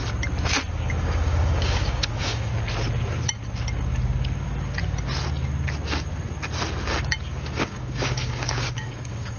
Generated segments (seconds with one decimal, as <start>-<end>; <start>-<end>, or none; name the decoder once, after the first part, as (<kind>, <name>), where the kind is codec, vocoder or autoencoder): 0.7-2.5 (codec, DAC); 7.6-9.4